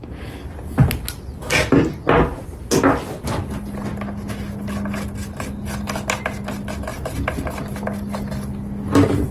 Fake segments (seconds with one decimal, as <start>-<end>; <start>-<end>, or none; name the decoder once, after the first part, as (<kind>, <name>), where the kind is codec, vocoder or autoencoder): none